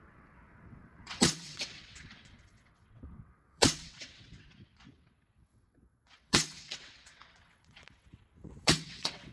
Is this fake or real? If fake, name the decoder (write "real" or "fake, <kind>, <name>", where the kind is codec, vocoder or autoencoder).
fake, vocoder, WaveNeXt